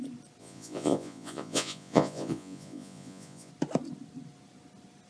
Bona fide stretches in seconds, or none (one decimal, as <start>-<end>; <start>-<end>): 0.0-0.4; 3.5-5.1